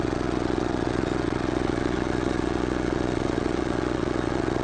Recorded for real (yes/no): no